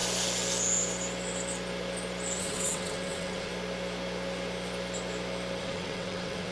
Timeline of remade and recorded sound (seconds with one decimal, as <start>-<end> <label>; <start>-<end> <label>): 0.0-2.4 recorded; 2.4-3.5 remade; 3.5-5.6 recorded; 5.6-6.5 remade